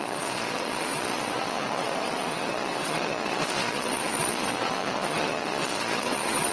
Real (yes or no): no